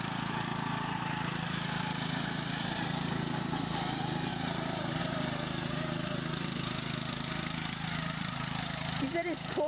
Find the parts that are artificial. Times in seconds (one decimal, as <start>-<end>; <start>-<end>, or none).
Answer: 0.0-0.5; 1.0-9.7

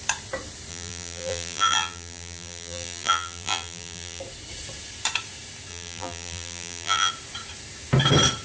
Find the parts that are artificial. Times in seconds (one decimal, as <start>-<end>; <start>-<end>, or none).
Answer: 0.7-4.2; 5.7-7.1

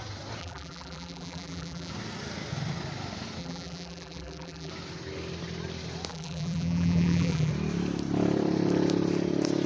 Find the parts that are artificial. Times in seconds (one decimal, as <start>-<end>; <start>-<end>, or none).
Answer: 0.4-1.9; 3.4-4.7; 6.1-7.5

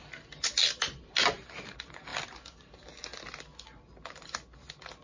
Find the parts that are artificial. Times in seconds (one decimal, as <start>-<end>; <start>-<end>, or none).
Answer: 2.1-3.0

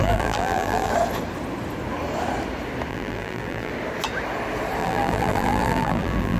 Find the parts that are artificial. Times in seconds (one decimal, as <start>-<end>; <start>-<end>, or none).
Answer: 0.0-0.9; 2.9-3.7; 4.8-6.4

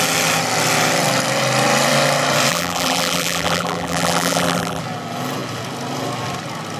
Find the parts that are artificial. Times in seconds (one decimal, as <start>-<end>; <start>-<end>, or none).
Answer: 2.5-4.8